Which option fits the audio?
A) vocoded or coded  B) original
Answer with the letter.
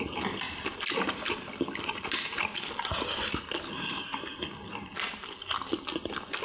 B